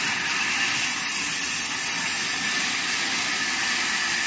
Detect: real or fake real